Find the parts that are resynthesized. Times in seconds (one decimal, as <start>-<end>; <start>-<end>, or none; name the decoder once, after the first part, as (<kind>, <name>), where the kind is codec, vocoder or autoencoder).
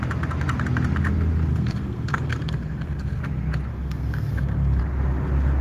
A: 1.5-3.2 (codec, SNAC); 3.7-4.8